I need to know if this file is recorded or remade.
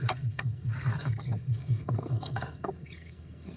remade